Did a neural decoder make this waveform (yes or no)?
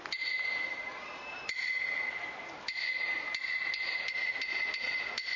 no